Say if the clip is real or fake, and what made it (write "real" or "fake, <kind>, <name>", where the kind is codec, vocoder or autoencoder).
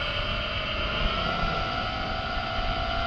real